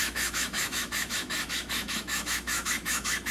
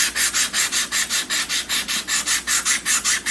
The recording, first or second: second